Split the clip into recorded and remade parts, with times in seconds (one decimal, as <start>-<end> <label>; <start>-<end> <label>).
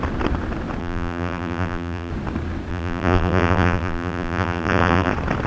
0.0-0.8 recorded; 0.8-2.1 remade; 2.1-2.7 recorded; 2.7-5.1 remade; 5.1-5.5 recorded